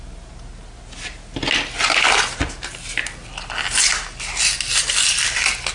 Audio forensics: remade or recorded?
recorded